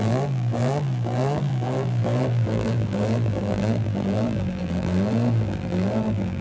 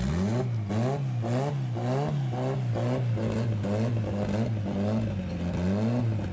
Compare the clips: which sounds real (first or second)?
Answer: second